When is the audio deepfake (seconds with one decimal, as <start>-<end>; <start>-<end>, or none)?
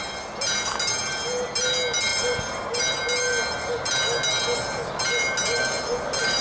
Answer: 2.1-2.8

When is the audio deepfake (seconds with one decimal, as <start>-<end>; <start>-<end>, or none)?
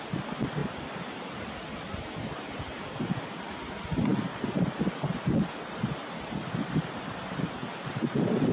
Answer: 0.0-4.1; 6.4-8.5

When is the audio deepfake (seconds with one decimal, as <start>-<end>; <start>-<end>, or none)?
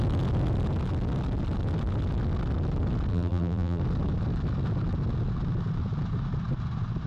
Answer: 3.1-3.8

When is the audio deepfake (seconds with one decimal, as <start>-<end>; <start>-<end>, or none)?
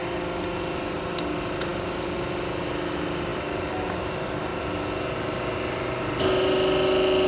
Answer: 1.7-2.2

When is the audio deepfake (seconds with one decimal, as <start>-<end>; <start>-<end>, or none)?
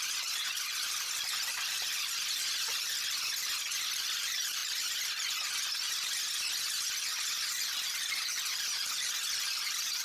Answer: 0.0-4.6; 7.2-10.0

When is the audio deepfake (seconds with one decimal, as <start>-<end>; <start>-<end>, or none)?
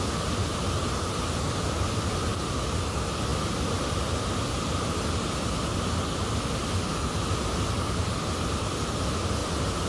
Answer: 0.4-1.5; 2.3-2.9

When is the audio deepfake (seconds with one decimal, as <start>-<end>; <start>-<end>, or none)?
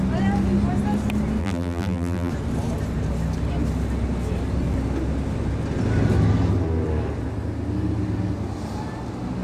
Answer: 1.4-2.3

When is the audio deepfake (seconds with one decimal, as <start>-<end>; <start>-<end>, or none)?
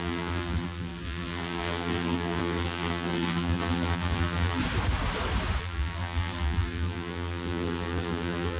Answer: 0.0-4.6; 5.6-8.6